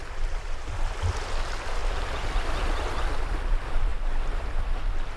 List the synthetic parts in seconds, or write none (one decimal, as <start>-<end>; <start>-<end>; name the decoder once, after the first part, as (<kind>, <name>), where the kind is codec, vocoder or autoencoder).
none